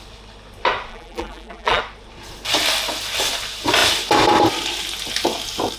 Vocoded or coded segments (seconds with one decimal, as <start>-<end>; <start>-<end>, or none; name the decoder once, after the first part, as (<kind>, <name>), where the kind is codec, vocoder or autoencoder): 0.9-1.8 (vocoder, BigVGAN v2)